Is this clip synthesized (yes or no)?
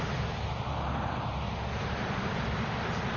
no